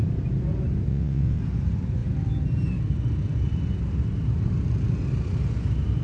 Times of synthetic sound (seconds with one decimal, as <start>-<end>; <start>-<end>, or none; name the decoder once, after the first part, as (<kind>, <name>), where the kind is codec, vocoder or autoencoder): 0.9-1.4 (vocoder, WaveNeXt)